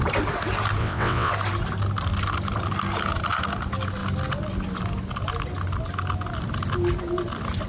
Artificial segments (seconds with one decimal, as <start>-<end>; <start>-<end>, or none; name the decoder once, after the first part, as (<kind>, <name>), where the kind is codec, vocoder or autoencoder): 0.8-1.3 (vocoder, WaveNeXt)